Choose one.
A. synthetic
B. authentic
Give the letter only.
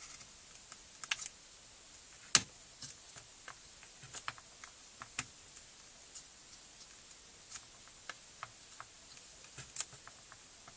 B